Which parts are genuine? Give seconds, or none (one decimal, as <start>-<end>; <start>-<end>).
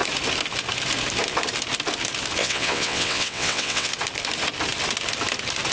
0.0-2.4; 3.9-5.7